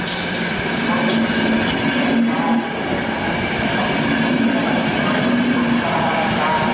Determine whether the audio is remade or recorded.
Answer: recorded